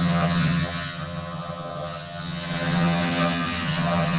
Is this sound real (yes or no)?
no